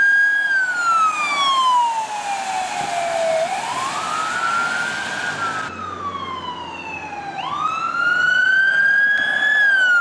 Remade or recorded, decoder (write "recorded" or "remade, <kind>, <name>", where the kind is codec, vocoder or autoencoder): recorded